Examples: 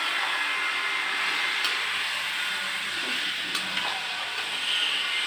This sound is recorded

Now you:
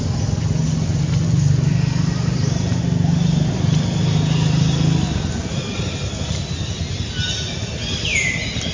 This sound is recorded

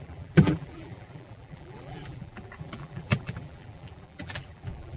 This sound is remade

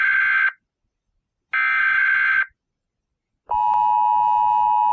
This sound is recorded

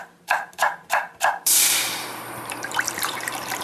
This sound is remade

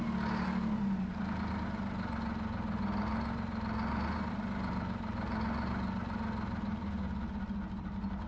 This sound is recorded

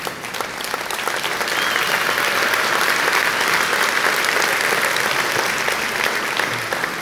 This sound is recorded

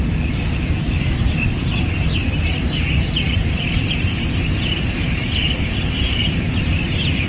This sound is remade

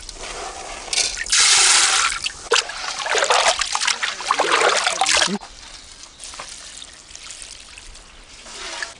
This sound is recorded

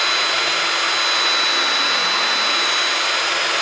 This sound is recorded